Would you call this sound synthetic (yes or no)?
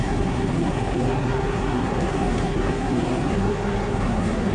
yes